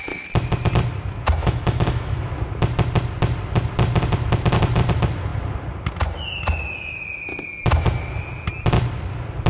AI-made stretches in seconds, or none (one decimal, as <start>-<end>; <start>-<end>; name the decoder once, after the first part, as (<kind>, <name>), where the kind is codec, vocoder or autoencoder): 1.4-2.2 (autoencoder, DAC-VAE)